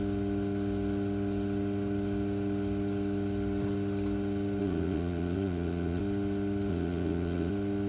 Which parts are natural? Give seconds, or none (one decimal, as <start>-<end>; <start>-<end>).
0.0-4.6; 6.0-6.7; 7.5-7.9